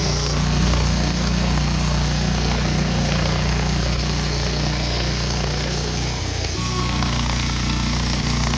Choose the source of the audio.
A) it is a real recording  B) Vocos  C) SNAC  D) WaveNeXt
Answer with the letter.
C